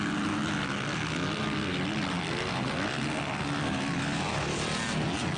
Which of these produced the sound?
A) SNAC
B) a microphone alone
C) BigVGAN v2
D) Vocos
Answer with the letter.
B